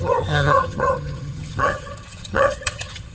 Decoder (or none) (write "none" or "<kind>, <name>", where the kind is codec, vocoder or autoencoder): vocoder, HiFi-GAN